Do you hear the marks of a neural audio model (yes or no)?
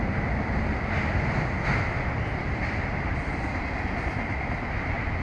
no